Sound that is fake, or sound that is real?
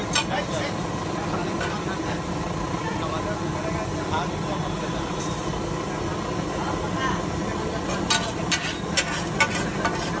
real